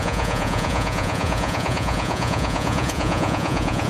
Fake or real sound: fake